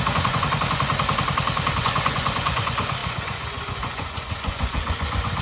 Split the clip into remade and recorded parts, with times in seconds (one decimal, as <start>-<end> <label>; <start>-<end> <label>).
0.0-0.9 remade; 0.9-1.8 recorded; 1.8-5.4 remade

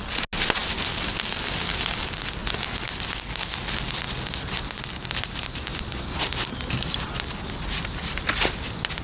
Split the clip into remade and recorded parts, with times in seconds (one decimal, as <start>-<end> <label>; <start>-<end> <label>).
0.0-9.0 recorded

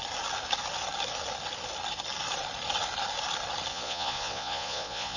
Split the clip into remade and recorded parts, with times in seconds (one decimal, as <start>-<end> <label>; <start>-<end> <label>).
0.0-3.7 recorded; 3.7-5.2 remade

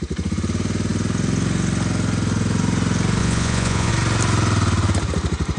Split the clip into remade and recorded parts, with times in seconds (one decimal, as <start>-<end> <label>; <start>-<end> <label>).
0.0-3.2 recorded; 3.2-3.9 remade; 3.9-5.6 recorded

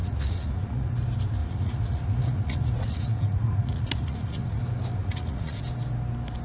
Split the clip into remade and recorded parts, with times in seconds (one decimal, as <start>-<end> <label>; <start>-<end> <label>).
0.0-0.9 remade; 0.9-1.4 recorded; 1.4-4.6 remade; 4.6-5.0 recorded; 5.0-5.6 remade; 5.6-6.4 recorded

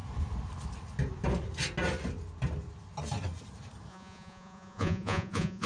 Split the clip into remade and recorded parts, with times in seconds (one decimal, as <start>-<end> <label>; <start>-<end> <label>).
0.0-3.9 recorded; 3.9-5.7 remade

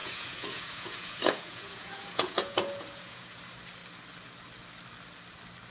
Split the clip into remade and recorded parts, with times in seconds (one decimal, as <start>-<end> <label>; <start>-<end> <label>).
0.0-3.4 remade; 3.4-5.7 recorded